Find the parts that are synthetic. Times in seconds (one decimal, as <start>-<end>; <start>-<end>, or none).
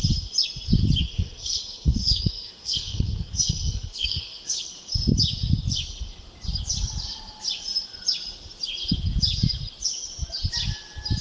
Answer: 1.1-4.9